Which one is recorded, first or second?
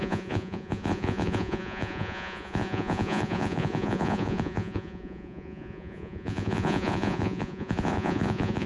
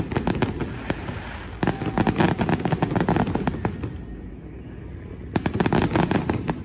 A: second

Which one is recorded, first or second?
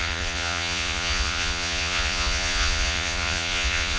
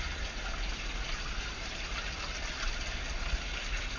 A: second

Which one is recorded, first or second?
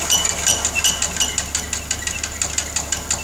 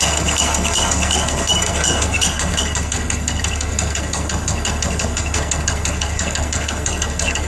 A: first